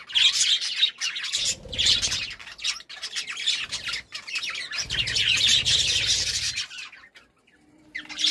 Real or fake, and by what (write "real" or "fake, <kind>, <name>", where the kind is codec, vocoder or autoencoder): real